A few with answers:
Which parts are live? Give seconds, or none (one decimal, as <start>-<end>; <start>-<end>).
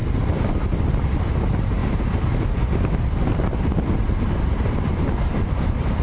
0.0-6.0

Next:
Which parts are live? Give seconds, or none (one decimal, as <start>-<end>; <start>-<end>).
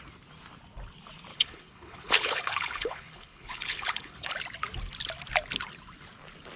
0.0-1.3; 4.3-6.6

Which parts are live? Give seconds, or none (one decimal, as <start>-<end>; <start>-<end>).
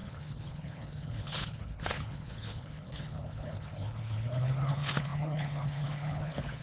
none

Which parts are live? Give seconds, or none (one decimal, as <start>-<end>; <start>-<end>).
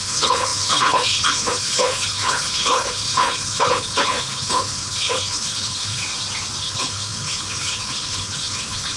6.0-6.6